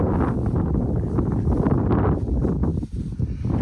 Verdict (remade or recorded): recorded